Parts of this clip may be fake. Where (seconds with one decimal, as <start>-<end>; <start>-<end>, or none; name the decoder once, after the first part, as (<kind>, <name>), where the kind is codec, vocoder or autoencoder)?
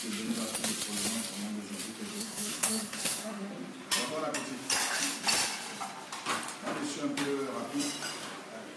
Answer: 2.1-3.5 (codec, SNAC)